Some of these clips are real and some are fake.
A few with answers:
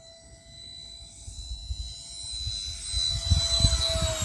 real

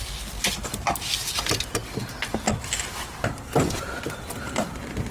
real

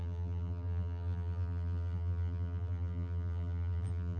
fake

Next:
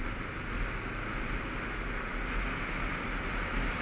real